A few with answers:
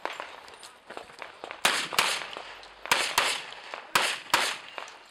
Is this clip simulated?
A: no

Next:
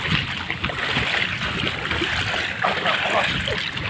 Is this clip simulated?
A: no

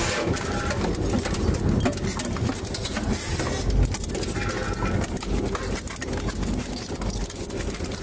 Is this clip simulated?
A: no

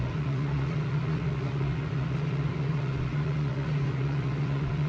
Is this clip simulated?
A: yes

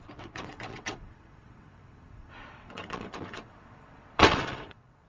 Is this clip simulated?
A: yes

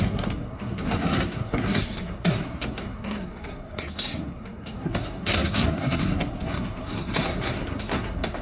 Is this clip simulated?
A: yes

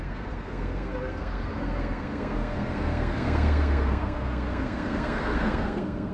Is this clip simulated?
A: yes